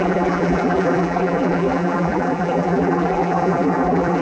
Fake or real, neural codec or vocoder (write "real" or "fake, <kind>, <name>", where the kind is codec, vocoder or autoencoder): fake, vocoder, BigVGAN v2